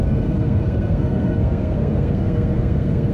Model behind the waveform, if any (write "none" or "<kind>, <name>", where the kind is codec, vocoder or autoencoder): codec, SNAC